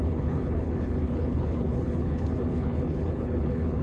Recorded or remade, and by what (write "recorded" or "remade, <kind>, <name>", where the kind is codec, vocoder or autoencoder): remade, codec, HILCodec